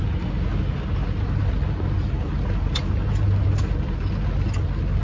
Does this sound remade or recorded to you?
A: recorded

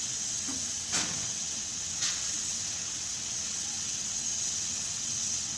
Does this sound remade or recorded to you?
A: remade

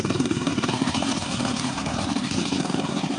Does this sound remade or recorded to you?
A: remade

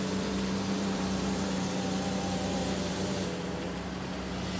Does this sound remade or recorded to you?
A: remade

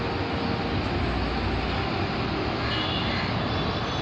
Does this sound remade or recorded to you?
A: recorded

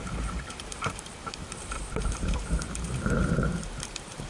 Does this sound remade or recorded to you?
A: remade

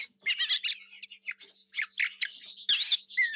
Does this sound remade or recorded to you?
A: recorded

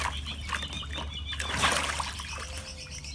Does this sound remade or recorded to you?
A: recorded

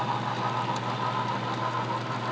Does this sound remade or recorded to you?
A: recorded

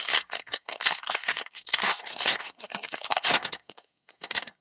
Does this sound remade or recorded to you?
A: remade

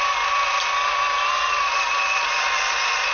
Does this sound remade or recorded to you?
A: recorded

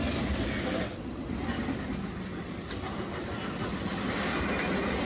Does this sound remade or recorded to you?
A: recorded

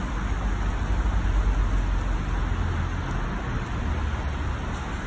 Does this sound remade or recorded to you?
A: recorded